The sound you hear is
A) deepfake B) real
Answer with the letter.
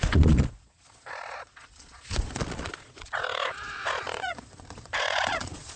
A